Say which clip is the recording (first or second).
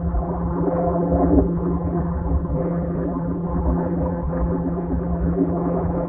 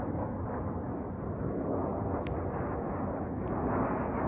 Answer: second